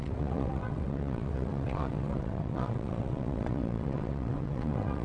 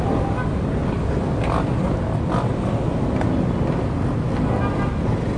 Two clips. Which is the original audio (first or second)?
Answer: second